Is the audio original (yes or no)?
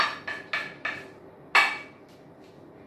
yes